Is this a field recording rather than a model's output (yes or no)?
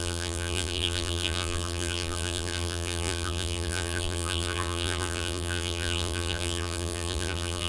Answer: no